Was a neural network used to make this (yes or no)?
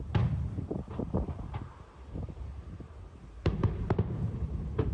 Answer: yes